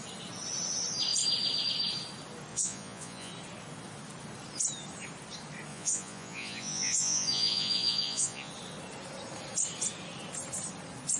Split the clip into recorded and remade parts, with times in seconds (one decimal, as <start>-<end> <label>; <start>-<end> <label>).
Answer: 0.0-2.5 recorded; 2.5-3.3 remade; 3.3-5.7 recorded; 5.7-8.5 remade; 8.5-11.2 recorded